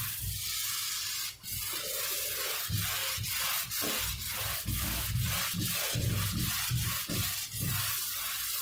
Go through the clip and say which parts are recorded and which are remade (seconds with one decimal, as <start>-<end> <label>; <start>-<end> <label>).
0.0-8.6 recorded